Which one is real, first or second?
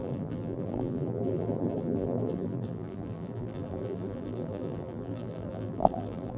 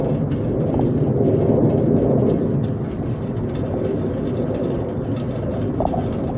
second